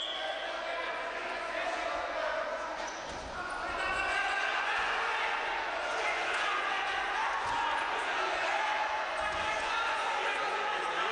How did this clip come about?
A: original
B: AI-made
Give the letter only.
B